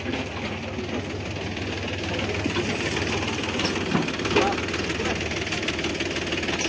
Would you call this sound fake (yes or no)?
no